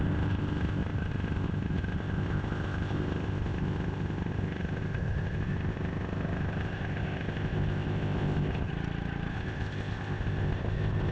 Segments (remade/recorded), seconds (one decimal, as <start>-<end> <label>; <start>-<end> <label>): 0.0-8.7 remade; 8.7-9.3 recorded; 9.3-11.1 remade